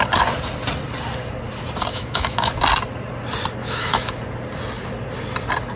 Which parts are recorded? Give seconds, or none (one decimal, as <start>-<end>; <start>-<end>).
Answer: 0.0-1.9; 2.5-3.6; 4.1-5.8